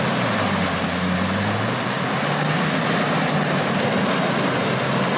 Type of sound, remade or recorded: recorded